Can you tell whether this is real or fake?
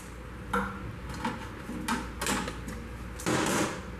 real